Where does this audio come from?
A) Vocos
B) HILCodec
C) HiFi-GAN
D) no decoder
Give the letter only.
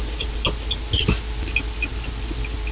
D